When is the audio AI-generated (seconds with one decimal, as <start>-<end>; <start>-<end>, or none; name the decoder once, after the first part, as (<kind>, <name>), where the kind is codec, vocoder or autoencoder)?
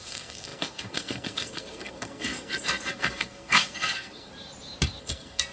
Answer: 0.0-4.3 (codec, SNAC); 5.0-5.5